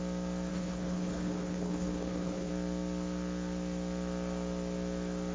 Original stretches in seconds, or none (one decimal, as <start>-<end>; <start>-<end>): 0.0-0.5; 2.5-5.3